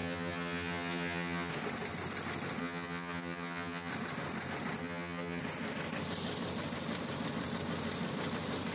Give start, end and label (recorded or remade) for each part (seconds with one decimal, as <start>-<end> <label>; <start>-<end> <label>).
0.0-1.5 remade; 1.5-2.6 recorded; 2.6-3.9 remade; 3.9-4.8 recorded; 4.8-5.4 remade; 5.4-8.7 recorded